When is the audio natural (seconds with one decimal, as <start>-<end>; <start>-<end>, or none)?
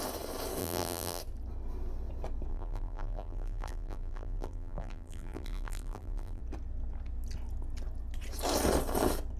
0.0-0.6; 1.2-2.5; 6.4-9.4